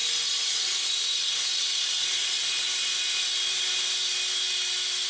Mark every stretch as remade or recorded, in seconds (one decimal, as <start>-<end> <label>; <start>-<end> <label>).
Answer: 0.0-2.5 remade; 2.5-5.1 recorded